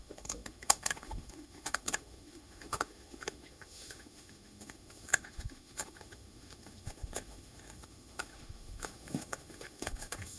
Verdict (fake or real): fake